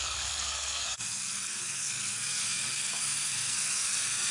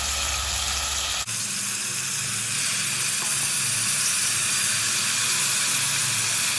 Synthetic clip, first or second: first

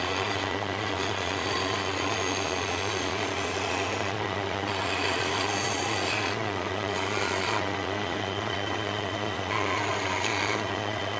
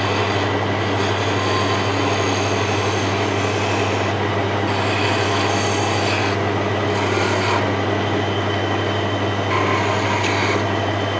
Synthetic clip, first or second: first